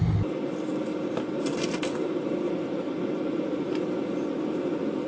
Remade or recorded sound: recorded